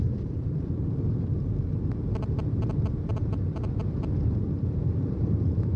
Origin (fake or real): fake